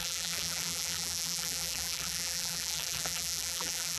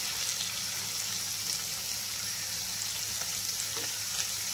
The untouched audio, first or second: second